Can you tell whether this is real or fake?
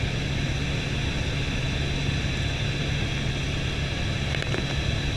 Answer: real